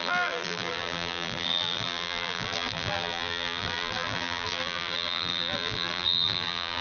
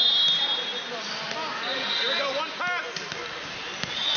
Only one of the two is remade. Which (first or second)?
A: first